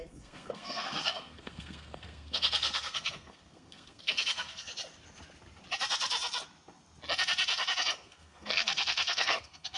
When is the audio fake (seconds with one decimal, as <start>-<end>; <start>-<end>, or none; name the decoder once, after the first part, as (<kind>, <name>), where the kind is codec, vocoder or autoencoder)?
0.0-4.7 (codec, SNAC); 7.9-9.8